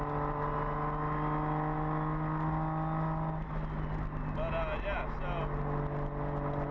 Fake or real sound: real